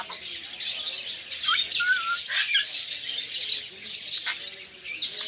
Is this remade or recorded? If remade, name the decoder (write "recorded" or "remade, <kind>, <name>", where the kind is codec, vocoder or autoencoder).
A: recorded